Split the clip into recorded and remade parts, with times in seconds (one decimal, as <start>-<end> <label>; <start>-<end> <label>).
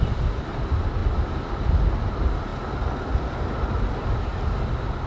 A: 0.0-5.1 recorded